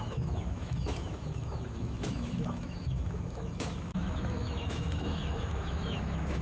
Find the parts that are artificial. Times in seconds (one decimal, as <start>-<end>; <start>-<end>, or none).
0.0-6.4